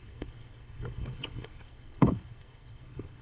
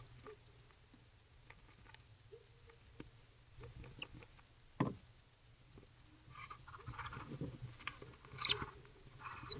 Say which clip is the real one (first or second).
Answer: second